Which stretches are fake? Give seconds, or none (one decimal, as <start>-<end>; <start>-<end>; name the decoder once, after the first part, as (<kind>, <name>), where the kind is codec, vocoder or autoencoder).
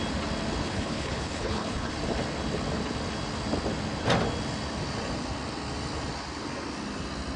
0.6-1.9 (codec, HILCodec)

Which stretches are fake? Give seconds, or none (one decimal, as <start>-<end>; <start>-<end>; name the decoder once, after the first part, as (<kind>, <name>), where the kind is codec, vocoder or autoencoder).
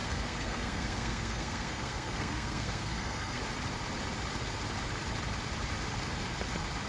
0.0-3.4 (codec, SNAC)